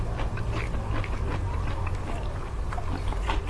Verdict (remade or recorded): recorded